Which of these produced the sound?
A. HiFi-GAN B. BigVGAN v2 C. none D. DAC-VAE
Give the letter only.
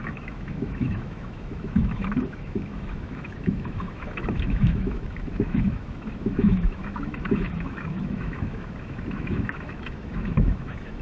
D